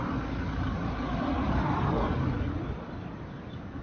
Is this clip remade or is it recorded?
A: recorded